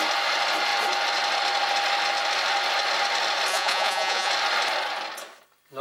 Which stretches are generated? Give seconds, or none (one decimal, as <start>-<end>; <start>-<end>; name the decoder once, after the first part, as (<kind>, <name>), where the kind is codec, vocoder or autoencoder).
3.5-4.3 (vocoder, Vocos)